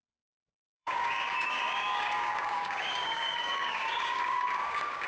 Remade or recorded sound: remade